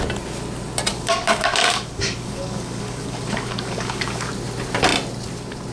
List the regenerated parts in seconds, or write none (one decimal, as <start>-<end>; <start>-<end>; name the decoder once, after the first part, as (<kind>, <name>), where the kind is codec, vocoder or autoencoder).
0.9-4.3 (codec, DAC)